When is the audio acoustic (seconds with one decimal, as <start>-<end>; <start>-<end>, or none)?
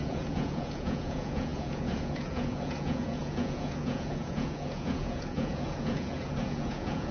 none